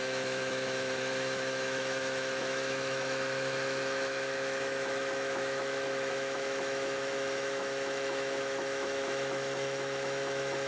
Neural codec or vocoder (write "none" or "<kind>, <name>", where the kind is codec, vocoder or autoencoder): autoencoder, DAC-VAE